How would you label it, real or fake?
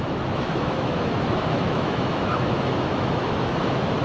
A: fake